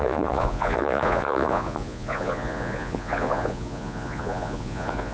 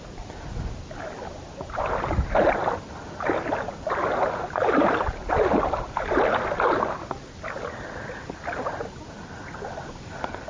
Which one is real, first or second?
second